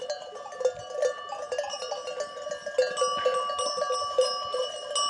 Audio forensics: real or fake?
real